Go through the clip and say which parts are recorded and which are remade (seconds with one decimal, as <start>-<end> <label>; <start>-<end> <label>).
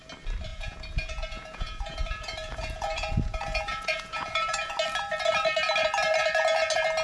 0.0-0.5 recorded; 0.5-4.7 remade; 4.7-7.0 recorded